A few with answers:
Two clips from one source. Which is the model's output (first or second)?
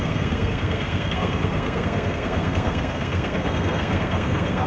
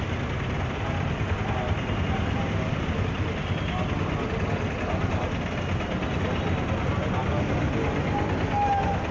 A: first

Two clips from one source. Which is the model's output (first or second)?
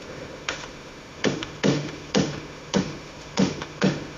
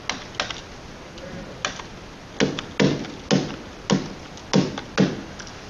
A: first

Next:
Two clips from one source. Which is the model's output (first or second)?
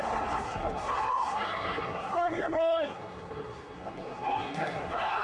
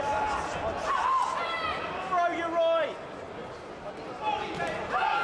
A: first